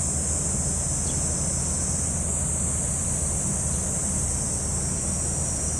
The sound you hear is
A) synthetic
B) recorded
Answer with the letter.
B